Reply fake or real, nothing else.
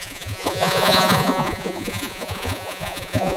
fake